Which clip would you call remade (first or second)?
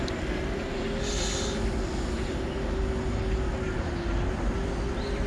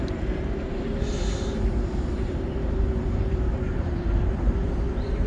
second